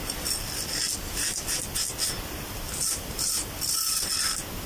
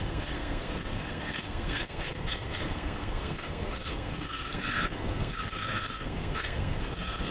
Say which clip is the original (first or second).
first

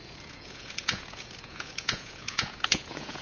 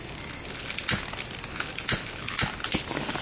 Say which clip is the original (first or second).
second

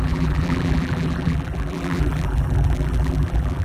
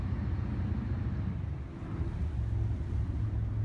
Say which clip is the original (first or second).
second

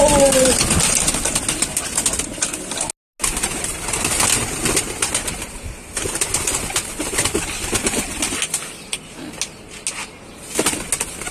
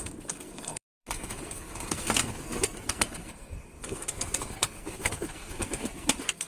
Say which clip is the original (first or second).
first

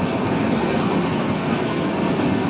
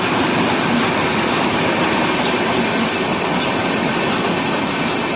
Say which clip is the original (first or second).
second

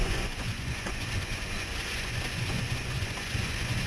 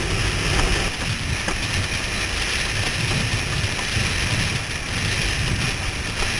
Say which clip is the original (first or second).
second